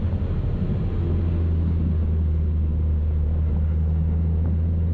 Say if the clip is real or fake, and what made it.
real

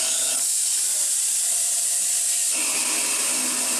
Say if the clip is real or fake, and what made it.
real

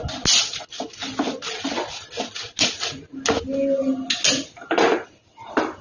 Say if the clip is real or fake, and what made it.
real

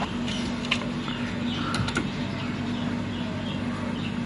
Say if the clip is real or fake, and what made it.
real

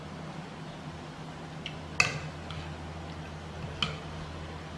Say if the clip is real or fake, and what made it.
real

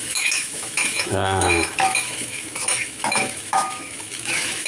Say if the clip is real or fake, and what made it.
fake, autoencoder, DAC-VAE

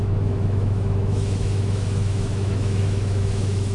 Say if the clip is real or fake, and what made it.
fake, autoencoder, DAC-VAE